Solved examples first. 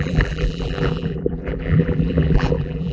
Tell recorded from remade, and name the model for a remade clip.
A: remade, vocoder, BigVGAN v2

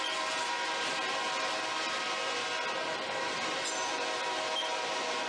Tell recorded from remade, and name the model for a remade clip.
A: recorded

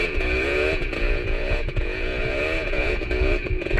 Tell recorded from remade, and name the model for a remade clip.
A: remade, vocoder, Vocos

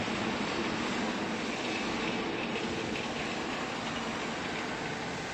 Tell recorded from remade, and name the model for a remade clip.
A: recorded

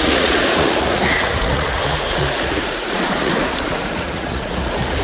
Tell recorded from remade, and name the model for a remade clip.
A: remade, vocoder, Vocos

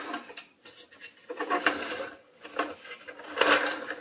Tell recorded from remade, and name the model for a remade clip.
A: recorded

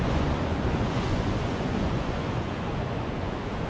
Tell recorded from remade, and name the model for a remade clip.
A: remade, vocoder, Vocos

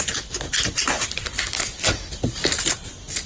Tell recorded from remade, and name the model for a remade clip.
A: recorded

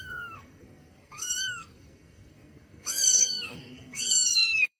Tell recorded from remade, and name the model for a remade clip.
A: remade, codec, SNAC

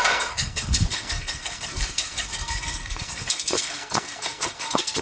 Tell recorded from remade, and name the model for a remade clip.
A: remade, codec, SNAC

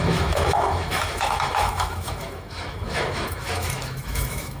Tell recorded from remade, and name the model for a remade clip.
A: remade, autoencoder, DAC-VAE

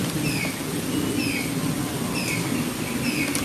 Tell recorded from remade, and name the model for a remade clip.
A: recorded